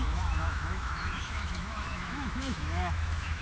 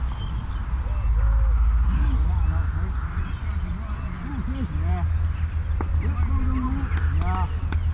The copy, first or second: first